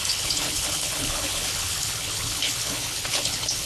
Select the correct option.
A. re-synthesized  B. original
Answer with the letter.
A